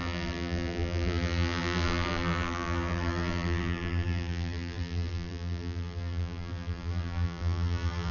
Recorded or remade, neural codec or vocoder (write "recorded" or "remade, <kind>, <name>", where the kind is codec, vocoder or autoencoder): remade, vocoder, BigVGAN v2